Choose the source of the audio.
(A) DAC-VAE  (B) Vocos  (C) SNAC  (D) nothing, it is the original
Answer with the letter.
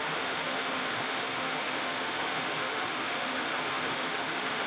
A